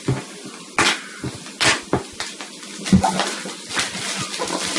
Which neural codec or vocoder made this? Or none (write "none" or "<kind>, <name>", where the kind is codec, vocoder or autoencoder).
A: none